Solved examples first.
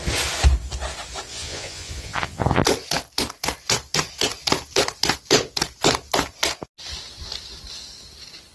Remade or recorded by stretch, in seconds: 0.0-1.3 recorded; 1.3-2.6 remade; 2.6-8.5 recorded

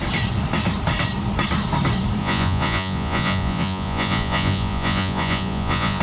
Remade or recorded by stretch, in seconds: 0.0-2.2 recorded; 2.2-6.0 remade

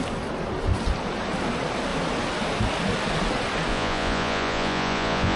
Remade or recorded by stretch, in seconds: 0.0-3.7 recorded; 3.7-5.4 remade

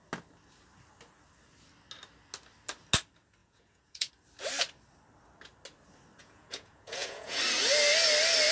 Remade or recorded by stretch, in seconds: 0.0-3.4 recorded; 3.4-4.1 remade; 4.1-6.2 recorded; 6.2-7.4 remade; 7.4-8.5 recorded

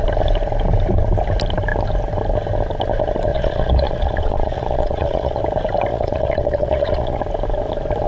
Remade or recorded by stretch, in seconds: 0.0-3.3 recorded; 3.3-5.4 remade; 5.4-5.9 recorded; 5.9-7.2 remade; 7.2-8.1 recorded

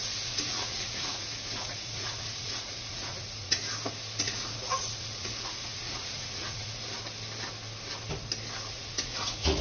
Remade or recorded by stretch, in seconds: 0.0-3.6 remade; 3.6-4.2 recorded; 4.2-6.8 remade; 6.8-8.7 recorded; 8.7-9.6 remade

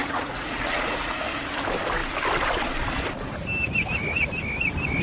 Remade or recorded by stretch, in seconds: 0.0-1.2 remade; 1.2-5.0 recorded